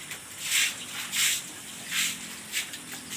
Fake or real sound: real